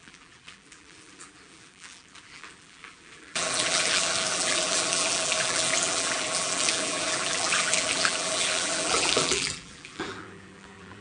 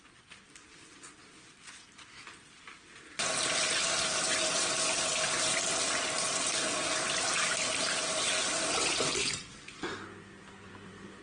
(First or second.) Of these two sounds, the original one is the second